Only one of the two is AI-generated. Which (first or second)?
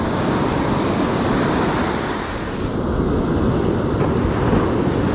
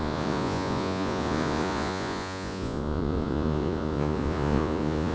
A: second